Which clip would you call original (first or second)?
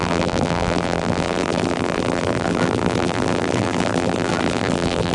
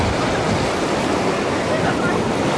second